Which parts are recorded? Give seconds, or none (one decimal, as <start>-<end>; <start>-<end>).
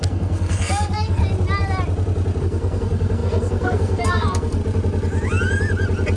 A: 1.2-2.4; 4.6-6.2